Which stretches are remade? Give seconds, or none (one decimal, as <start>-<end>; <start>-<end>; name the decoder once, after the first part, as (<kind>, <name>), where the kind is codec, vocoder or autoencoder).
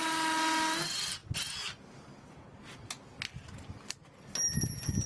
none